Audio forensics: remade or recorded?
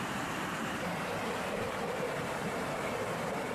remade